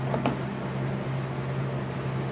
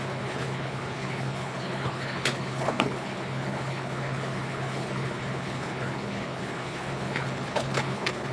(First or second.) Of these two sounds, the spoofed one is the second